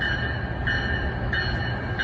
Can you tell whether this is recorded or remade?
recorded